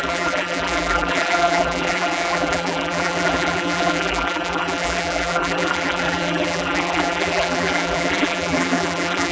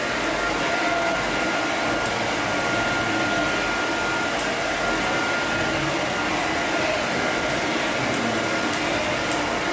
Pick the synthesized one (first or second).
first